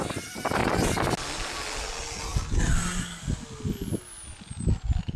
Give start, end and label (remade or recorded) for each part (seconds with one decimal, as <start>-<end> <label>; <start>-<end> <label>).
0.0-5.2 recorded